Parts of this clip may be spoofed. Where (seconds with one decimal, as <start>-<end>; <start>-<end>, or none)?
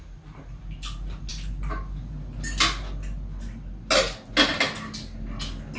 none